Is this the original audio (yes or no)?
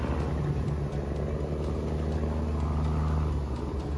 yes